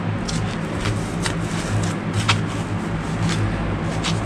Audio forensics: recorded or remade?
recorded